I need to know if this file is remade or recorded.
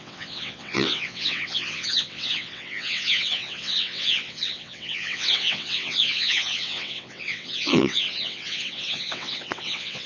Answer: remade